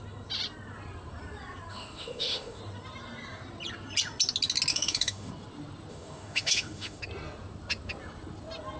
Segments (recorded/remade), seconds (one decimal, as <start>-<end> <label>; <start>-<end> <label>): 0.0-1.7 recorded; 1.7-2.6 remade; 2.6-4.7 recorded; 4.7-5.3 remade; 5.3-5.9 recorded; 5.9-7.0 remade; 7.0-8.8 recorded